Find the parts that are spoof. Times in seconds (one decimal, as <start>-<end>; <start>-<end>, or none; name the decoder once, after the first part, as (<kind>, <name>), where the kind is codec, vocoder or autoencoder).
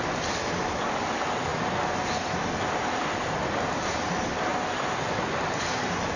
none